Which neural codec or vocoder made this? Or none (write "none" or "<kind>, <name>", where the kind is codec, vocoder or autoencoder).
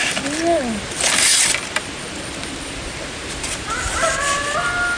none